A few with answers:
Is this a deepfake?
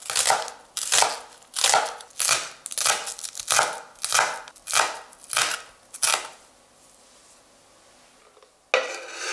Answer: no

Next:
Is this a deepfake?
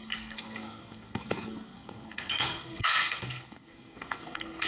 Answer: yes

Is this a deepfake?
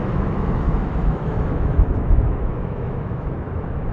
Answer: yes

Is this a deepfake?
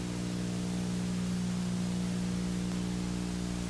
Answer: no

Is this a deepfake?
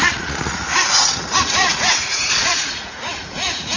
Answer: yes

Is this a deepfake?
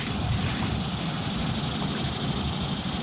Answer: no